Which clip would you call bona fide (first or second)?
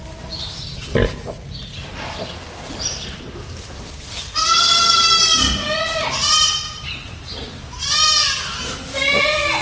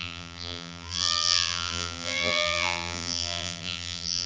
first